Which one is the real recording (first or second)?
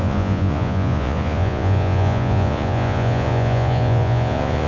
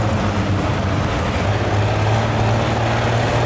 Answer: second